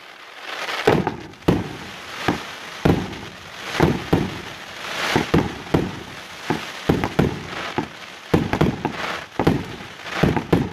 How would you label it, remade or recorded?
recorded